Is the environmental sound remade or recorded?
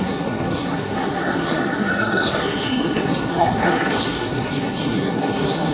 remade